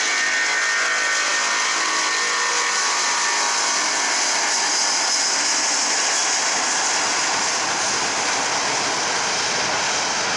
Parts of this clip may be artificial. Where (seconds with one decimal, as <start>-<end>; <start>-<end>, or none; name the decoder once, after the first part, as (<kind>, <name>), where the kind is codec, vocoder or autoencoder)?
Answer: none